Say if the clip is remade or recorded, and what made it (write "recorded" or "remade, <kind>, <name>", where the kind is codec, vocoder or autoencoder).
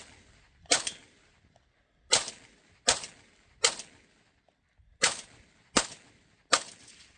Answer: recorded